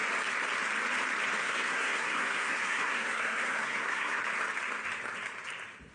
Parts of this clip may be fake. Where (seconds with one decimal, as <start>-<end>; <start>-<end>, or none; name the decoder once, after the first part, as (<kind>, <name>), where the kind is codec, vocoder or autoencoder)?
1.4-4.2 (codec, SNAC)